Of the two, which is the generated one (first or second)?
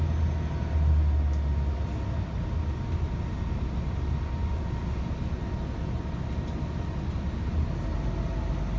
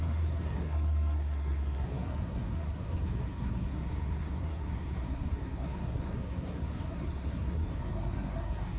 second